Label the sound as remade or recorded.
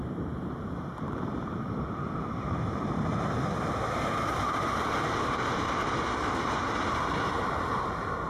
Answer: remade